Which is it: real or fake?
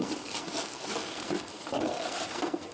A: fake